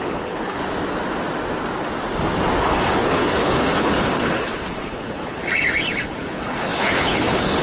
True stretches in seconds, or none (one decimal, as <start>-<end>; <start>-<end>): 0.6-2.6; 5.4-6.0